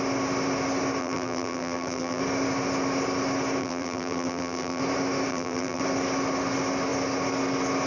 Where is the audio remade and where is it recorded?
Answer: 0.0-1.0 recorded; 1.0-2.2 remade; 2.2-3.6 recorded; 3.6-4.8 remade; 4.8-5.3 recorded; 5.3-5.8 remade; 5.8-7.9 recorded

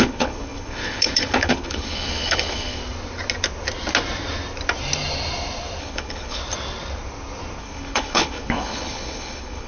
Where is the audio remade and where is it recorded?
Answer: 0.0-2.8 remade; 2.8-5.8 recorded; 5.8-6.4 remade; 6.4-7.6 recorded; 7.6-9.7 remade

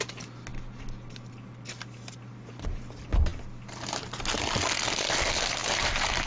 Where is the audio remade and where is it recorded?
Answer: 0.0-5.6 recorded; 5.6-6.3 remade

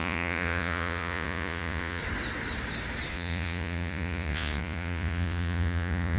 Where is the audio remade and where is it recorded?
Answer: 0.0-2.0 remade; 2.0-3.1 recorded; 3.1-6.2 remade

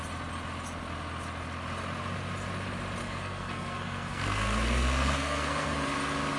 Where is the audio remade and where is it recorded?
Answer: 0.0-3.0 recorded; 3.0-5.9 remade; 5.9-6.4 recorded